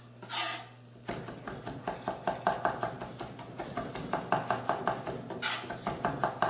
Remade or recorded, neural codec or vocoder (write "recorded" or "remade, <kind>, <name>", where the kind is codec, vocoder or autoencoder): recorded